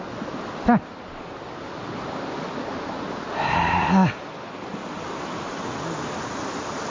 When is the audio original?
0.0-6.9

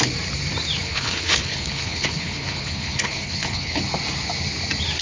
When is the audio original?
0.0-0.8; 3.8-5.0

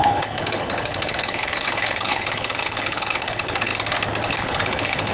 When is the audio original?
3.7-4.3

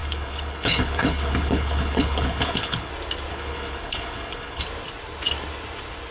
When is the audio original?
2.9-3.3; 4.6-6.1

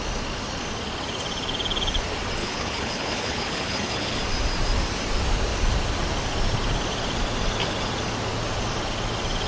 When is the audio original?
0.0-2.4; 4.2-9.5

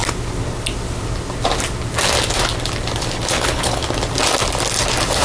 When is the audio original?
0.0-3.1; 3.8-5.2

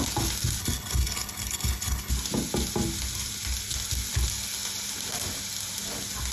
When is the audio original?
0.0-0.6; 2.1-6.3